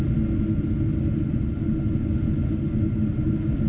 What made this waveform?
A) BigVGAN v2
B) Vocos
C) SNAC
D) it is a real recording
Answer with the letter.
D